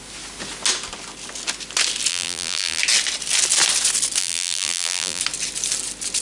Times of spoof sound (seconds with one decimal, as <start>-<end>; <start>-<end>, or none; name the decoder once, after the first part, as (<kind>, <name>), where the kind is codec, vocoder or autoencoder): 2.1-2.8 (vocoder, BigVGAN v2); 4.2-5.2